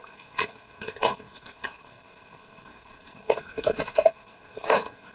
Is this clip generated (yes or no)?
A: yes